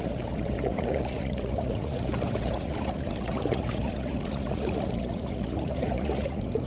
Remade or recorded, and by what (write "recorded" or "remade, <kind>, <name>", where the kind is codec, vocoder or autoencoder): remade, vocoder, Vocos